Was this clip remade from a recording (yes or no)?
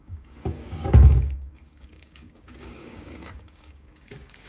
yes